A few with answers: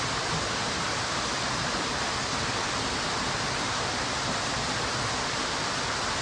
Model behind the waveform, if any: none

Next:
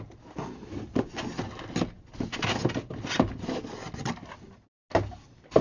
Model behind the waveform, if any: none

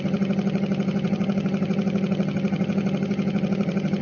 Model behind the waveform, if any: vocoder, HiFi-GAN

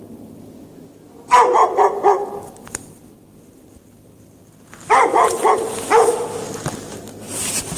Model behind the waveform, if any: none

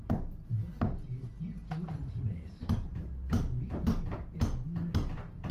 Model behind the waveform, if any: none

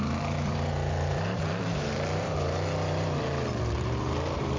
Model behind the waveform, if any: vocoder, BigVGAN v2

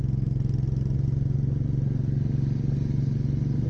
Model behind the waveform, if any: none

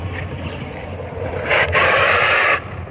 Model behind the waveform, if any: vocoder, BigVGAN v2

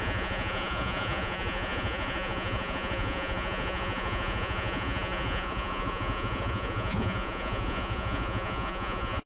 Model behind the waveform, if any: vocoder, Vocos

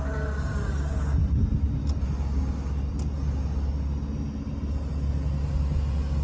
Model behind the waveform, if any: none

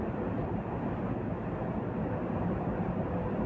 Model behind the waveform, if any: vocoder, BigVGAN v2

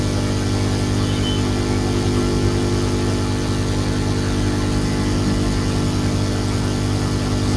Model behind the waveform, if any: none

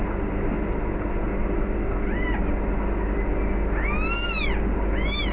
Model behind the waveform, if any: none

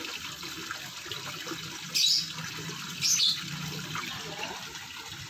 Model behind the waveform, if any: none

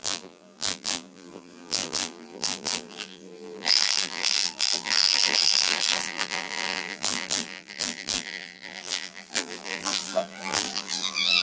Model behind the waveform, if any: vocoder, BigVGAN v2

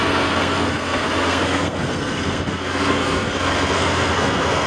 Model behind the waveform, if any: codec, SNAC